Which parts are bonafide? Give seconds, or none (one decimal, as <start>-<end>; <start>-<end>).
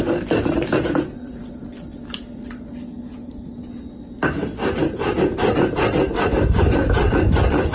1.7-3.1; 3.6-6.2